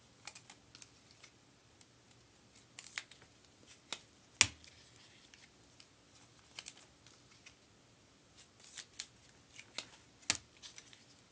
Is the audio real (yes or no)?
yes